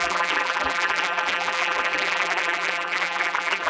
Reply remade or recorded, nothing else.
remade